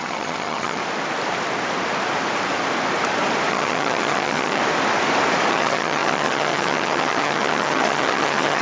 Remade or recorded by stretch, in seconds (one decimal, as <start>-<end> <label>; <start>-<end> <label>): 0.0-0.8 remade; 0.8-3.5 recorded; 3.5-4.6 remade; 4.6-5.5 recorded; 5.5-8.6 remade